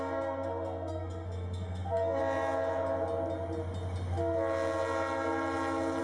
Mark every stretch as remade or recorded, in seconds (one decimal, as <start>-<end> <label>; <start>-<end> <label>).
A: 0.0-2.2 remade; 2.2-6.0 recorded